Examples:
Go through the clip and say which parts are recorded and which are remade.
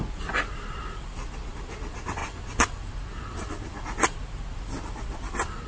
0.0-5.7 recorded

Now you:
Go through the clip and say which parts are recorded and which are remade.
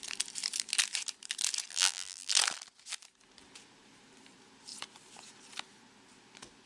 0.0-1.7 recorded; 1.7-2.3 remade; 2.3-6.7 recorded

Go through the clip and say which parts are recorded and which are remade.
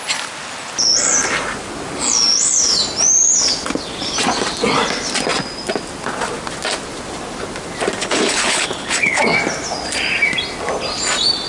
0.0-8.0 recorded; 8.0-9.2 remade; 9.2-11.5 recorded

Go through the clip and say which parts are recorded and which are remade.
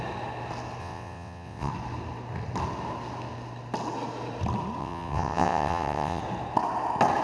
0.0-0.8 recorded; 0.8-1.7 remade; 1.7-4.8 recorded; 4.8-6.2 remade; 6.2-7.2 recorded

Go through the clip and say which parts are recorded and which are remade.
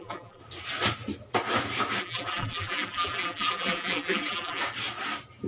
0.0-0.4 remade; 0.4-2.0 recorded; 2.0-4.6 remade; 4.6-5.5 recorded